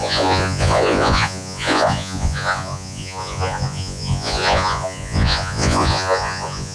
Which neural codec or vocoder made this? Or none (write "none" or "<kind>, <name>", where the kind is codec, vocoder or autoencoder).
vocoder, Vocos